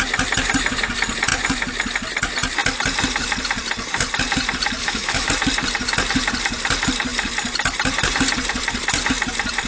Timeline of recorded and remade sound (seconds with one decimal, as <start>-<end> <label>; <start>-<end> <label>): 0.0-4.8 recorded; 4.8-5.3 remade; 5.3-9.7 recorded